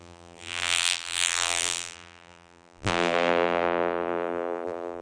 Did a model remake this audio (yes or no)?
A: yes